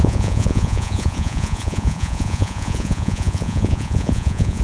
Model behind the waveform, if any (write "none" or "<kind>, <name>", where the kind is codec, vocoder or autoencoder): vocoder, Vocos